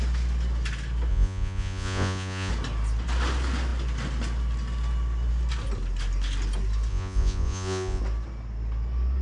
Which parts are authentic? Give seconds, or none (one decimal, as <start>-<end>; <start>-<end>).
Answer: 0.0-1.1; 2.5-6.9; 8.0-9.2